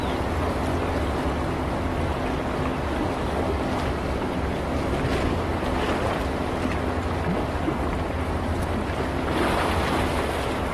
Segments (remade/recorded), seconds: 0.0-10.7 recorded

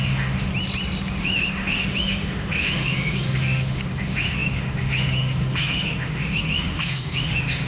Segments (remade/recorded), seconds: 0.0-0.5 remade; 0.5-1.2 recorded; 1.2-7.7 remade

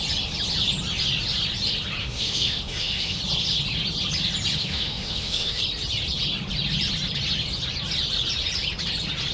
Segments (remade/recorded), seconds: 0.0-2.0 recorded; 2.0-3.2 remade; 3.2-4.6 recorded; 4.6-5.6 remade; 5.6-9.3 recorded

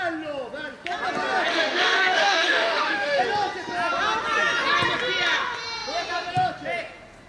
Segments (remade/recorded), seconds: 0.0-1.5 recorded; 1.5-3.2 remade; 3.2-7.3 recorded

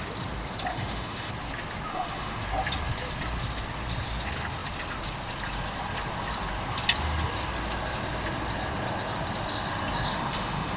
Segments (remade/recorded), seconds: 0.0-0.7 recorded; 0.7-1.3 remade; 1.3-1.9 recorded; 1.9-2.4 remade; 2.4-10.1 recorded; 10.1-10.8 remade